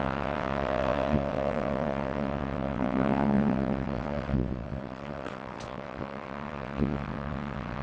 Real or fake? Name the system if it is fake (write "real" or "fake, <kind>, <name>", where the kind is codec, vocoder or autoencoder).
fake, vocoder, WaveNeXt